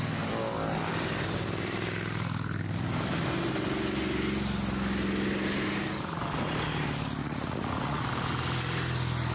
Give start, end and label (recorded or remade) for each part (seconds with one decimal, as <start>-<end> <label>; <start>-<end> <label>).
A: 0.0-7.2 recorded; 7.2-8.0 remade; 8.0-9.3 recorded